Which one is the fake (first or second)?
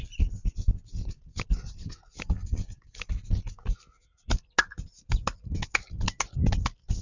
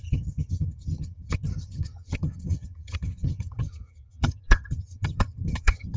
second